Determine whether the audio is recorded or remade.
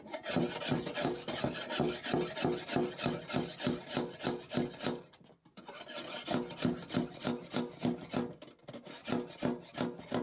recorded